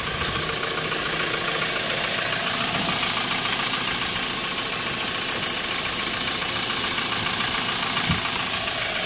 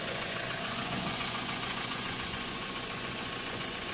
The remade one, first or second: second